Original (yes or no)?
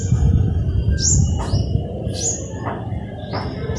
yes